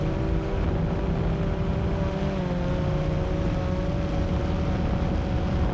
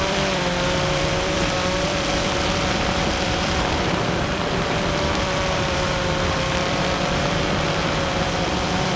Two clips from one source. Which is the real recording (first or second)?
first